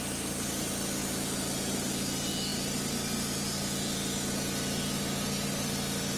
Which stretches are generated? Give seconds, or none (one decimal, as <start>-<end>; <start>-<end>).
none